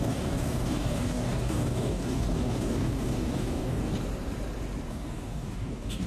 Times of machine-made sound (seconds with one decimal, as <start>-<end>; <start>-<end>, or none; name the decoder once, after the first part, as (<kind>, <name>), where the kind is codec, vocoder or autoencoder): 0.0-3.9 (codec, DAC); 4.9-6.1